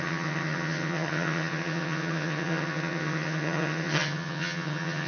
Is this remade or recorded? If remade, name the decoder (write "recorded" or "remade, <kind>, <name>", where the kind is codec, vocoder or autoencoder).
remade, vocoder, HiFi-GAN